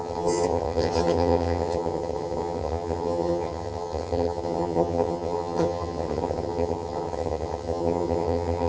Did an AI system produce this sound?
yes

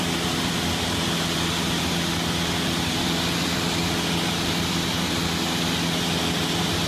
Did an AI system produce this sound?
no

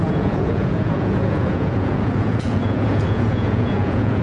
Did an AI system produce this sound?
yes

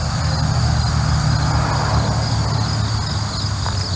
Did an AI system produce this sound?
no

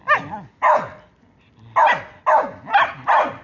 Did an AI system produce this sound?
no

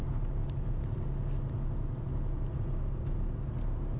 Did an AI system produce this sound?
no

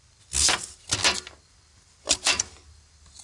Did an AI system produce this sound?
no